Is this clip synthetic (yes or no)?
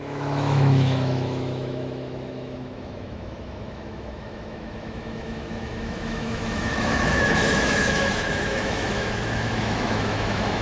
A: yes